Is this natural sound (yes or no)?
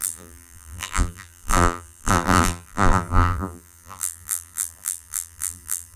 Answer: no